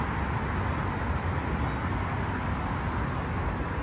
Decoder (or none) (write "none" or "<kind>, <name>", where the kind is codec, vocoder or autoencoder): none